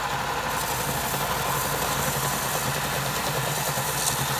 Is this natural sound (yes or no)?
yes